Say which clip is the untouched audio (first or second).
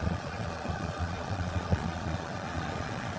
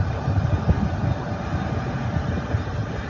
second